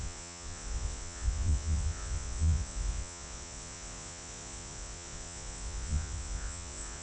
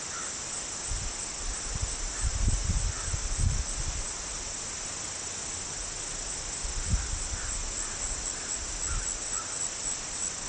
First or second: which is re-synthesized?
first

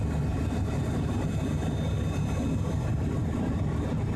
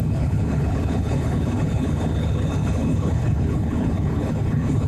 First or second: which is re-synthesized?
second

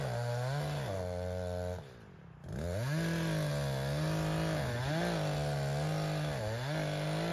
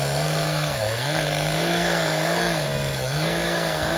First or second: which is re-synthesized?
second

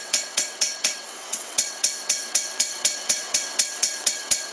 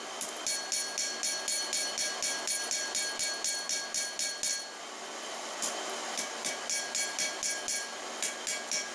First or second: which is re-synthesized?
first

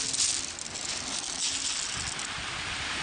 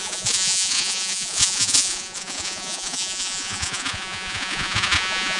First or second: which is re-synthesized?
second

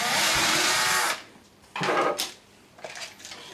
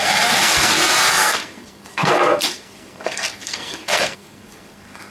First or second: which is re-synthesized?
second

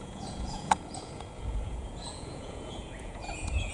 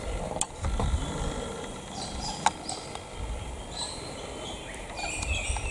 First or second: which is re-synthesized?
first